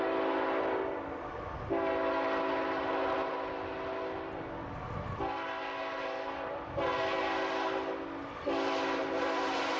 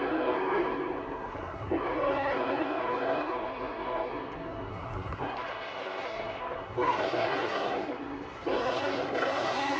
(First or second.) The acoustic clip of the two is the first